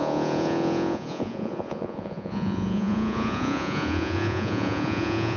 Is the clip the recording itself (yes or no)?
no